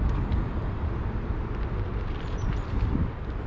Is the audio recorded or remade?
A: remade